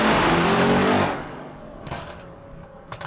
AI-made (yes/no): yes